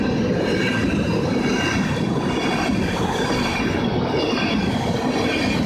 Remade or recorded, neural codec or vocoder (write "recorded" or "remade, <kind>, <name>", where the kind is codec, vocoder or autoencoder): recorded